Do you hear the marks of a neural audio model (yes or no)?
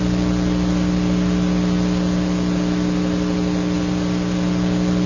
no